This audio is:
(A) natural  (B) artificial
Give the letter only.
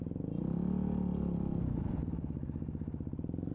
A